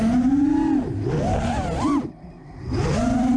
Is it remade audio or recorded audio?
recorded